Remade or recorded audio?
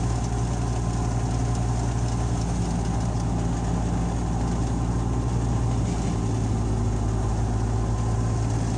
recorded